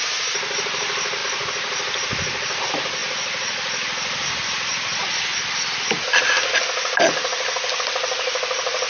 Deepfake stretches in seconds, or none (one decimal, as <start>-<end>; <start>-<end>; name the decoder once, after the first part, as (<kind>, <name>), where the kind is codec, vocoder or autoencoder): none